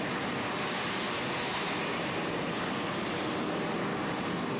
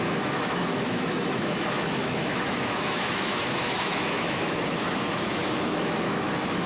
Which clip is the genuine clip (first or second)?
first